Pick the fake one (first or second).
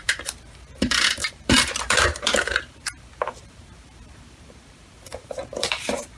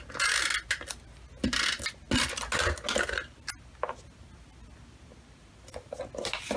first